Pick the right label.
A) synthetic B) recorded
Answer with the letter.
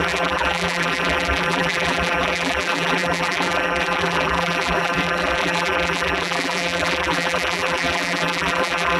A